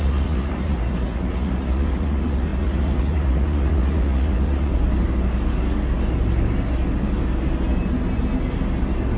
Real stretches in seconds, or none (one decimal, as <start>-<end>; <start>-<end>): 4.7-9.2